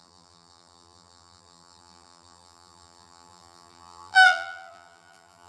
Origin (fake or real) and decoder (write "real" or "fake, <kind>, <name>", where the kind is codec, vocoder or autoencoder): fake, vocoder, BigVGAN v2